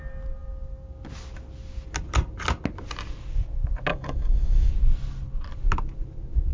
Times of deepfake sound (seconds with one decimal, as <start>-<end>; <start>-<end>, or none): 3.9-4.7